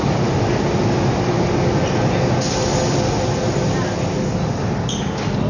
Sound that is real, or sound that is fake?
real